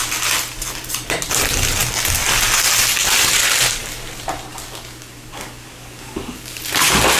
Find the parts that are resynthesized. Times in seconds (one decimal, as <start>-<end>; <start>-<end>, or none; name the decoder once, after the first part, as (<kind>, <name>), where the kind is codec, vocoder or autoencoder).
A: 4.5-6.6 (codec, DAC)